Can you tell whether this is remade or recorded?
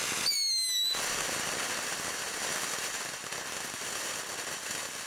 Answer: recorded